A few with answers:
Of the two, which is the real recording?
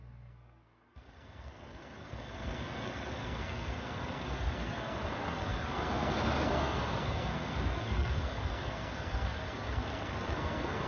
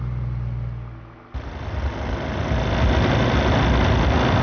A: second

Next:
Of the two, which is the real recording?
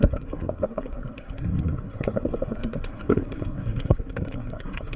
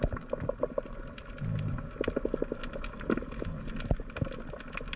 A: second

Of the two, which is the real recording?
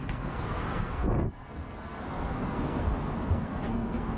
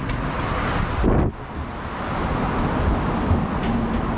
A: second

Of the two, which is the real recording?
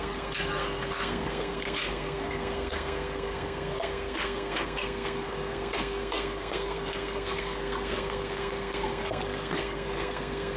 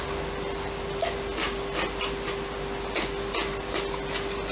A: second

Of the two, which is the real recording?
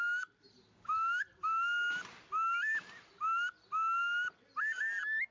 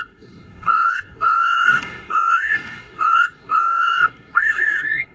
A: first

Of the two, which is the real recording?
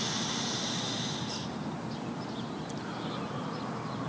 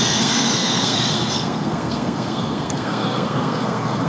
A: first